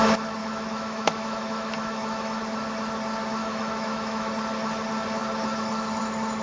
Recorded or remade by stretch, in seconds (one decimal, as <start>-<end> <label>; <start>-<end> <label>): 0.0-0.4 recorded; 0.4-2.4 remade; 2.4-3.4 recorded; 3.4-4.3 remade; 4.3-6.4 recorded